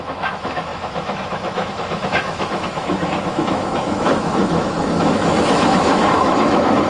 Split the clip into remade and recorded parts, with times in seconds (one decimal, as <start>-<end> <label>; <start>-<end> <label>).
0.0-6.9 remade